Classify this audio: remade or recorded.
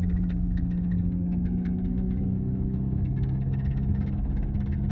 remade